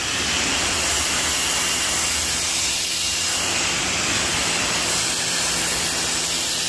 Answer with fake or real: real